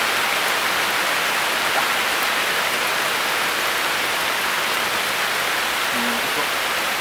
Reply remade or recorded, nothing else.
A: recorded